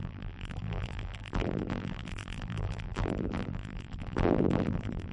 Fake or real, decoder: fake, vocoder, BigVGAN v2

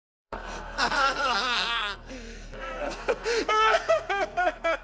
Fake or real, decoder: fake, codec, SNAC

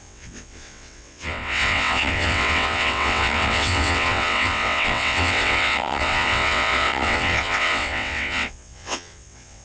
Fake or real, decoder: fake, vocoder, WaveNeXt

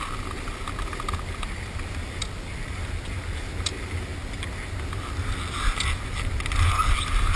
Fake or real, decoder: real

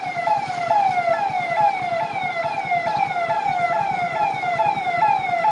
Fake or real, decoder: real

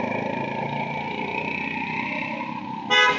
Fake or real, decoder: real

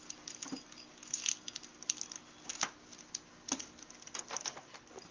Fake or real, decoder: real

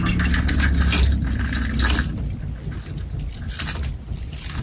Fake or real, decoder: real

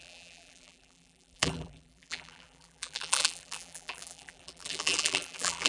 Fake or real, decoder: fake, vocoder, BigVGAN v2